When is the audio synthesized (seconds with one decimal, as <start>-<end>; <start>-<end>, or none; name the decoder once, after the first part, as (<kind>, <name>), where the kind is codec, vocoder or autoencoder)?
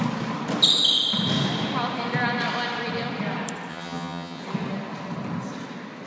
3.7-4.4 (vocoder, HiFi-GAN)